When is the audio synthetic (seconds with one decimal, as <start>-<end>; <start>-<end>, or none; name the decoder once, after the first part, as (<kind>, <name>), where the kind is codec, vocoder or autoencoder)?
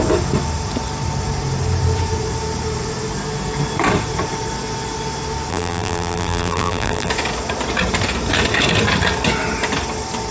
5.5-7.1 (vocoder, BigVGAN v2)